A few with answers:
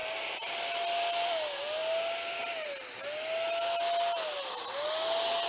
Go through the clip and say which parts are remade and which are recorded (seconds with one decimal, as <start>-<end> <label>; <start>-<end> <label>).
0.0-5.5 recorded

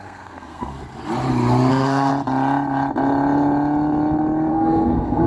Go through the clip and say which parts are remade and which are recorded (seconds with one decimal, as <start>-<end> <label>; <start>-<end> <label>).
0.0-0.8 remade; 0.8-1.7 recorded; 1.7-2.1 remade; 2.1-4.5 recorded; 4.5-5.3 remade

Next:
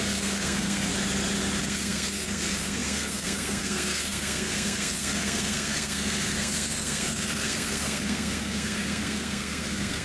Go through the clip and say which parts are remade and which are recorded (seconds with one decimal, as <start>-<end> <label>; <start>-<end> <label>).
0.0-0.9 remade; 0.9-1.6 recorded; 1.6-10.0 remade

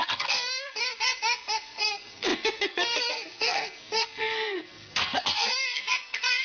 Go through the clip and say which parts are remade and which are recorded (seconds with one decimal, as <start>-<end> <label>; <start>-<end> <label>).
0.0-6.4 remade

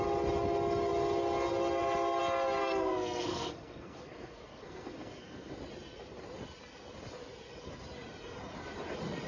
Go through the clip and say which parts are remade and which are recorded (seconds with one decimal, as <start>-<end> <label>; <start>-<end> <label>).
0.0-2.6 recorded; 2.6-5.5 remade; 5.5-9.3 recorded

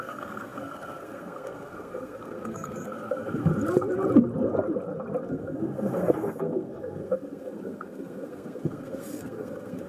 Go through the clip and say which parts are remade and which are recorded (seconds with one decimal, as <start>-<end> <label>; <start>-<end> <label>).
0.0-3.5 remade; 3.5-5.3 recorded; 5.3-9.9 remade

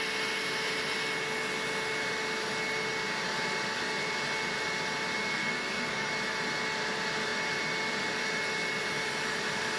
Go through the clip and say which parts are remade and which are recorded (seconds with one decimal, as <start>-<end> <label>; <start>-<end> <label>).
0.0-5.3 recorded; 5.3-6.1 remade; 6.1-9.8 recorded

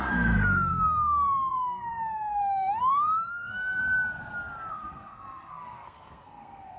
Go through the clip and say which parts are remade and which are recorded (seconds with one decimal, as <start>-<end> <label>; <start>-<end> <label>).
0.0-3.8 remade; 3.8-4.7 recorded; 4.7-6.8 remade